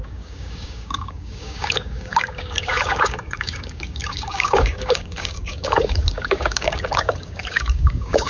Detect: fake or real fake